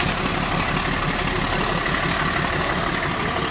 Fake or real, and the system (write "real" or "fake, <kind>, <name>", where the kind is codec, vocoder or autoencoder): real